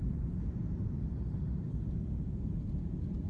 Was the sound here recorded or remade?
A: recorded